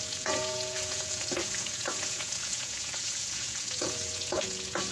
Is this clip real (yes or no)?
no